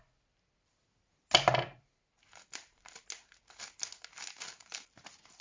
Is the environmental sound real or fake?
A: real